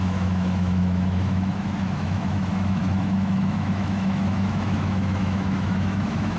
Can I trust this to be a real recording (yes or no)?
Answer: no